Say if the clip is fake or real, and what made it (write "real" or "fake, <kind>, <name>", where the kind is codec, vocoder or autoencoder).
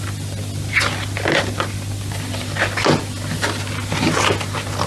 real